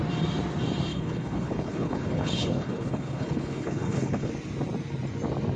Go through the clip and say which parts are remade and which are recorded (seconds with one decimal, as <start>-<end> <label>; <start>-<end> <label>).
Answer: 0.0-0.9 recorded; 0.9-4.3 remade; 4.3-5.6 recorded

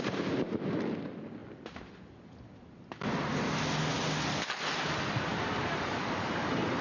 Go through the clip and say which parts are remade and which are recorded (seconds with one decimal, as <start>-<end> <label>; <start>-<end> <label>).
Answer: 0.0-6.8 recorded

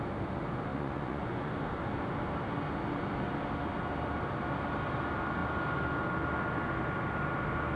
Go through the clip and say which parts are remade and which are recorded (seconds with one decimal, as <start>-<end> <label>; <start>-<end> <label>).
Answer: 0.0-0.7 recorded; 0.7-1.5 remade; 1.5-7.8 recorded

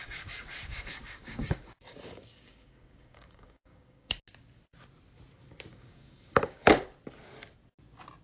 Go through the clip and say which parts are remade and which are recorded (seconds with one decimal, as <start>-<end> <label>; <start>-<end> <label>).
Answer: 0.0-4.2 remade; 4.2-5.7 recorded; 5.7-6.7 remade; 6.7-8.2 recorded

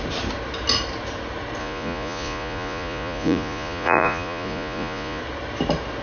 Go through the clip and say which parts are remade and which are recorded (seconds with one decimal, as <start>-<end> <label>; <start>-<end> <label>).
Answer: 0.0-1.6 recorded; 1.6-5.2 remade; 5.2-6.0 recorded